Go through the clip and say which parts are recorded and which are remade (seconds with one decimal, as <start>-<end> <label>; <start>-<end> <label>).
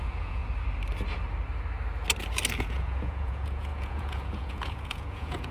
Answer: 0.0-0.4 remade; 0.4-2.6 recorded; 2.6-5.5 remade